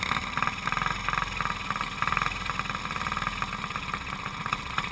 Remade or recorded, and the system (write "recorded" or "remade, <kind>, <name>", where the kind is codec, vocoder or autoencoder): recorded